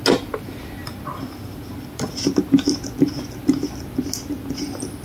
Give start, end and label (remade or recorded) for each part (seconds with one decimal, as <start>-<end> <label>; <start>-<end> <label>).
0.0-5.0 recorded

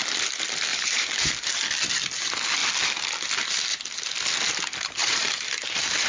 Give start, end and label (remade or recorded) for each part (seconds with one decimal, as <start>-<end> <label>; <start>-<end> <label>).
0.0-0.7 recorded; 0.7-1.5 remade; 1.5-5.0 recorded; 5.0-6.1 remade

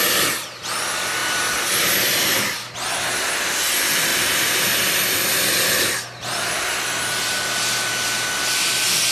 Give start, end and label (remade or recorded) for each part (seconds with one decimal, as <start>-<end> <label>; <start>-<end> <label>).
0.0-9.1 recorded

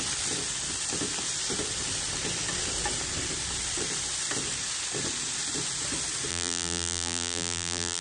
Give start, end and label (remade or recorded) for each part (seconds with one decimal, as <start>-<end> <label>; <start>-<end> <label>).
0.0-6.3 recorded; 6.3-8.0 remade

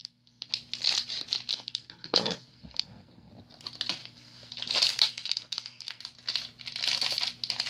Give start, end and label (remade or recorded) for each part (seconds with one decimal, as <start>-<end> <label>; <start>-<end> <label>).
0.0-0.5 remade; 0.5-1.5 recorded; 1.5-3.3 remade; 3.3-4.0 recorded; 4.0-4.5 remade; 4.5-4.9 recorded; 4.9-6.0 remade; 6.0-7.7 recorded

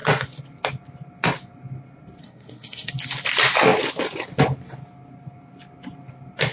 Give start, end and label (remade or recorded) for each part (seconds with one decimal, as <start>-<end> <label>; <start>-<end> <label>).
0.0-2.2 recorded; 2.2-2.9 remade; 2.9-6.5 recorded

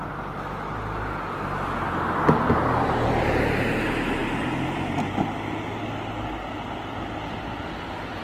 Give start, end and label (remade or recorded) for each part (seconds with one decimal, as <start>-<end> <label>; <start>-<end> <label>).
0.0-8.2 recorded